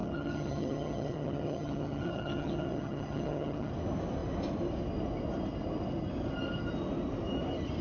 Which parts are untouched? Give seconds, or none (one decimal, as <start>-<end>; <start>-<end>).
3.7-7.8